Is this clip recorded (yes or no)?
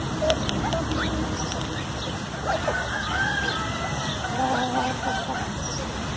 yes